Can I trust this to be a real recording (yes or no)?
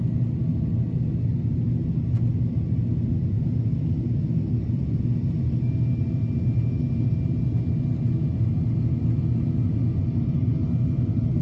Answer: yes